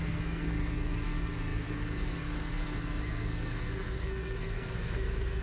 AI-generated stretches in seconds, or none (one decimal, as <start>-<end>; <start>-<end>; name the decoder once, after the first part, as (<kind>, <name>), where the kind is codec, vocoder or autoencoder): 0.0-5.4 (codec, SNAC)